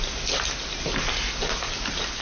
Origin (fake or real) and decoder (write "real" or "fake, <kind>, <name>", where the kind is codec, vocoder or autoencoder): real